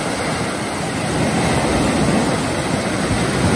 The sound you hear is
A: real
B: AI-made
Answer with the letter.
A